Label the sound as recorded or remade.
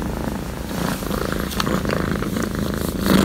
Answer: recorded